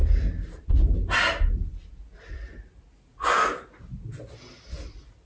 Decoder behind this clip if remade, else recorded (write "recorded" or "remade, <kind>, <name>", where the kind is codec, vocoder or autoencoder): recorded